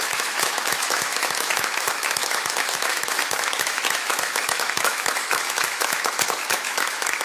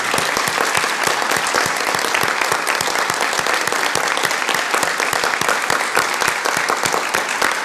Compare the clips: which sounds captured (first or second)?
second